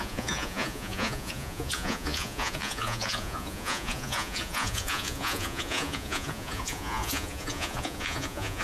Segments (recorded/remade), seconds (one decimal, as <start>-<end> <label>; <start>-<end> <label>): 0.0-8.6 remade